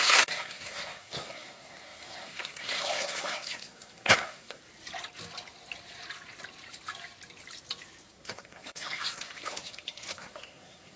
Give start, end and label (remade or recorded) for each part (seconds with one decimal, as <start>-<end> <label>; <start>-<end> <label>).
0.0-4.6 remade; 4.6-8.1 recorded; 8.1-11.0 remade